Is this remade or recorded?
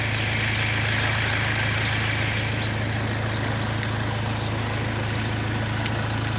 recorded